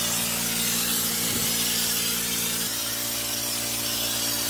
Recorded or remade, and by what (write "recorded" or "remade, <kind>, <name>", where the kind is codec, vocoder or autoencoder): recorded